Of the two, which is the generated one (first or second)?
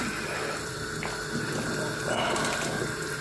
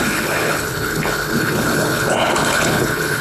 second